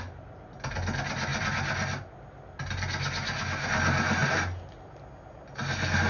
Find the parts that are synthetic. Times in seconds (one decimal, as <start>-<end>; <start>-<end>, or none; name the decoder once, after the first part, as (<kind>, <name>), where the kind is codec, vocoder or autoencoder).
none